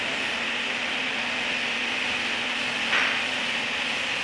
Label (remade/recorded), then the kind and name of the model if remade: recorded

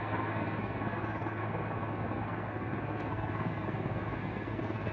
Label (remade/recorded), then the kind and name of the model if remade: remade, codec, SNAC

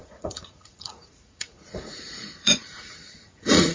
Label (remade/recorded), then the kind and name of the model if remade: remade, vocoder, Vocos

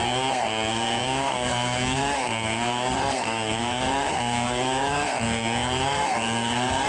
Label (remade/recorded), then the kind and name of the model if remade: remade, codec, SNAC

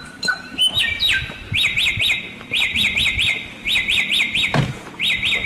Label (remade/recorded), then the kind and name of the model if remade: remade, vocoder, BigVGAN v2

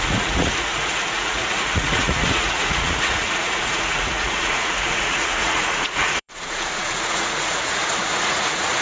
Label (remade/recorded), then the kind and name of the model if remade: remade, vocoder, Vocos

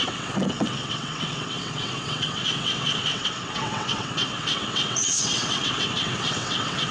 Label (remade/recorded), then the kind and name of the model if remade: remade, vocoder, WaveNeXt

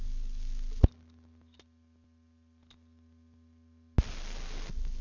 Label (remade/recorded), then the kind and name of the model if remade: recorded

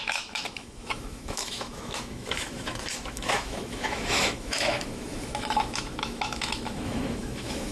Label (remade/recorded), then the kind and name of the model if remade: remade, autoencoder, DAC-VAE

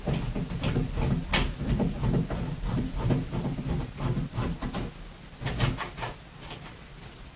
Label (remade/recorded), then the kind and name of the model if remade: recorded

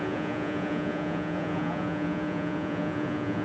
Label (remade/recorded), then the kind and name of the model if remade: remade, vocoder, Vocos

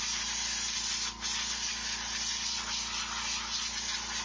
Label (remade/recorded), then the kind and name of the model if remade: recorded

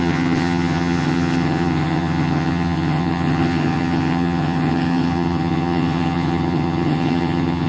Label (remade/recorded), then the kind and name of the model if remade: remade, vocoder, HiFi-GAN